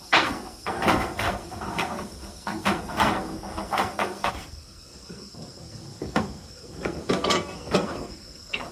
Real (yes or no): no